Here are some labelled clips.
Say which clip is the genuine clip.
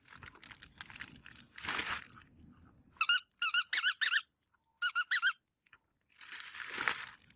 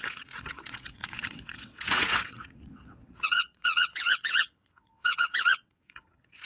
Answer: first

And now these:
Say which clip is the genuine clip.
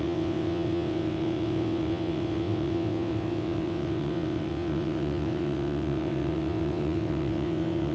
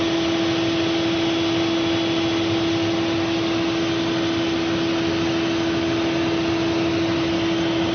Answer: second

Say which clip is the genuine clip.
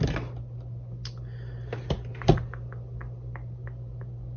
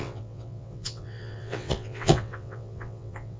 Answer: first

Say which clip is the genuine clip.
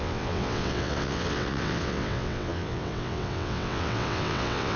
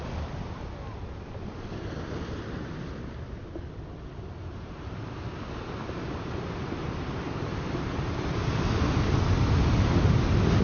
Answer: second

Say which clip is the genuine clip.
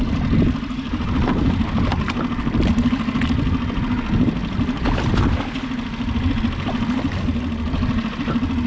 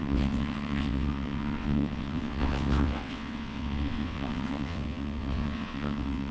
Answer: first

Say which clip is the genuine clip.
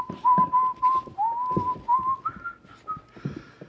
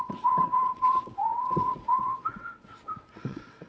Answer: first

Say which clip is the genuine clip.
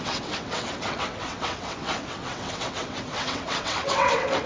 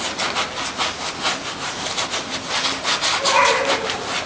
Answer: second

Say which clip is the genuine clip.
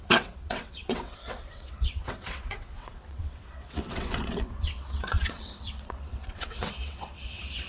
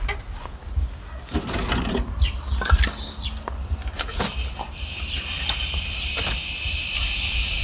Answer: second